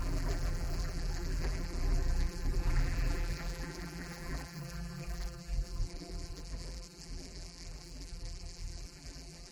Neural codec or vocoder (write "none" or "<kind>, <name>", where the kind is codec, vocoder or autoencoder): vocoder, BigVGAN v2